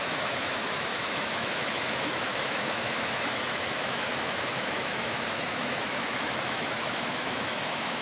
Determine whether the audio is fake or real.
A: fake